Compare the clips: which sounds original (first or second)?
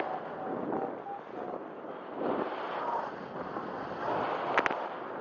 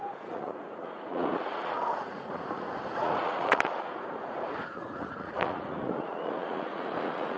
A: first